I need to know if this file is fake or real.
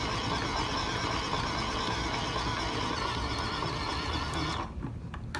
real